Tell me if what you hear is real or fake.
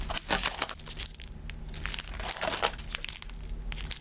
real